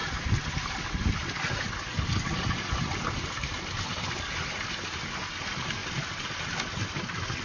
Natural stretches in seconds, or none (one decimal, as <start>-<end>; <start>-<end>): 0.0-7.4